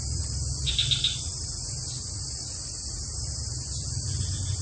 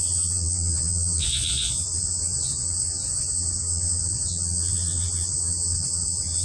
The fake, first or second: second